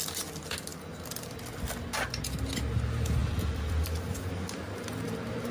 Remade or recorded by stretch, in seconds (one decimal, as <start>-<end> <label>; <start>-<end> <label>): 0.0-3.2 recorded; 3.2-4.3 remade; 4.3-5.5 recorded